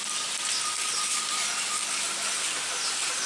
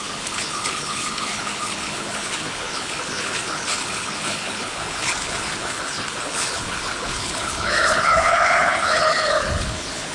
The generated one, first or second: second